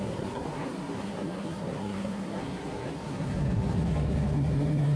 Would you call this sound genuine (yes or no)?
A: no